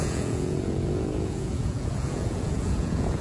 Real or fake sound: fake